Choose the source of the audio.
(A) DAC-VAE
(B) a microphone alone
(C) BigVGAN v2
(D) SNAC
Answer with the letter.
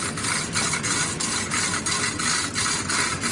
B